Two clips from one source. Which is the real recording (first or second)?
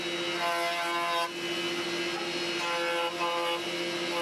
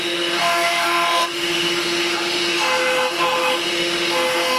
first